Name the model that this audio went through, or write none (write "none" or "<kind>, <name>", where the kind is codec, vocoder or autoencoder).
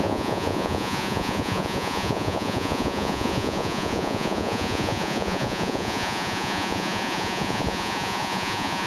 vocoder, Vocos